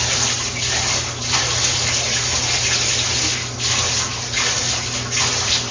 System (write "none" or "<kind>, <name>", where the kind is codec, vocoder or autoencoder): none